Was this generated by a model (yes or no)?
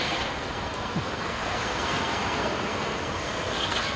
yes